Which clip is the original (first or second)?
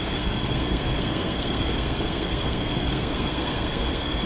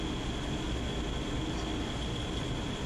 second